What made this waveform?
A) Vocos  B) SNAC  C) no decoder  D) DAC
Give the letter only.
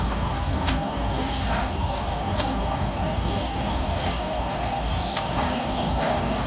D